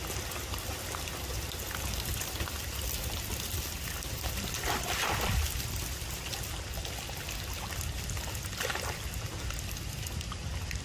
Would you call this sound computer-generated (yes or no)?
no